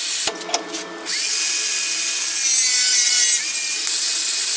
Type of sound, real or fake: real